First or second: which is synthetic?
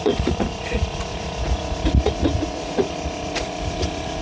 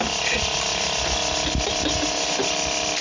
first